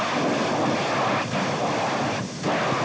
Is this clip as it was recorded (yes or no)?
yes